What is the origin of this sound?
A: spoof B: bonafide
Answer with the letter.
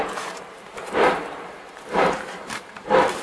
A